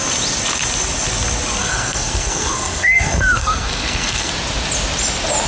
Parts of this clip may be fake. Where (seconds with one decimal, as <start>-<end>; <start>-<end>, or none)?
1.6-4.3